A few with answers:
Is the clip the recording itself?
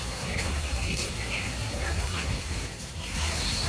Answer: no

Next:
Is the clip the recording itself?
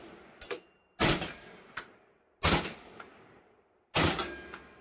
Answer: yes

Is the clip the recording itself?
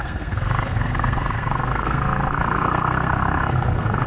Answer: no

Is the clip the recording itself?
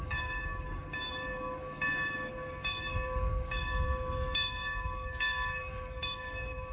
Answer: no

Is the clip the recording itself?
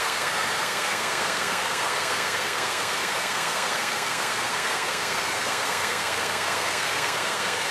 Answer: no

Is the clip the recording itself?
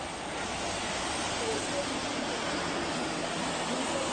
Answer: yes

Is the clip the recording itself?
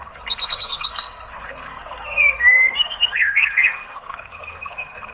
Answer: no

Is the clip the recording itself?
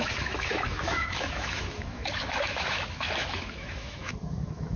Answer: no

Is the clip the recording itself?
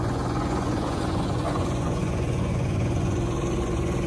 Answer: no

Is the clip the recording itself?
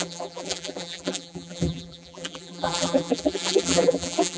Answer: no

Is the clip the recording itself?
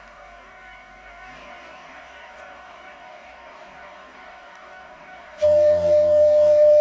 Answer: no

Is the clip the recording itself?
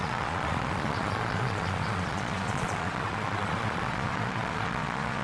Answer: no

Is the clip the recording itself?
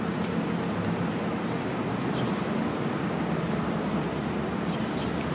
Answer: yes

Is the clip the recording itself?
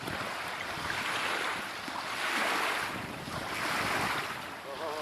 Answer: no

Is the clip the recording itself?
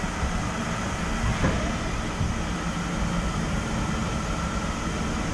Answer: yes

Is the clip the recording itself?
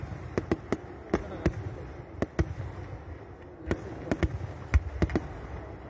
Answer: yes